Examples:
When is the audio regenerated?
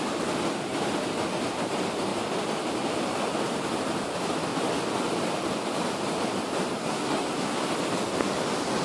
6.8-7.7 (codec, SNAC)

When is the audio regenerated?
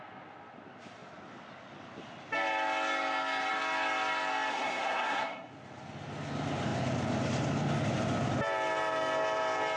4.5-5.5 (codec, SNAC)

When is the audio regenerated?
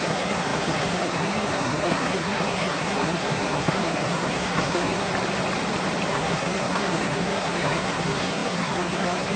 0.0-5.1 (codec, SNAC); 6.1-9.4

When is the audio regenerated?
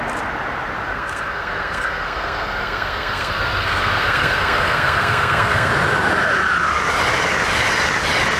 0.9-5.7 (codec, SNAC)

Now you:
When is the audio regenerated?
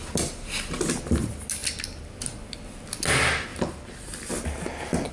none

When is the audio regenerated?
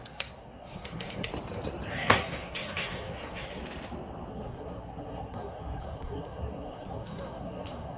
0.0-1.3 (codec, SNAC); 1.9-3.6; 4.3-8.0